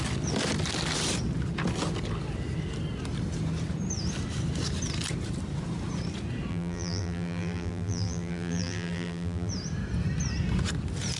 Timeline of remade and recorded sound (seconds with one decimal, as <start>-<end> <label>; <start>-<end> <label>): 0.0-6.5 recorded; 6.5-9.5 remade; 9.5-11.2 recorded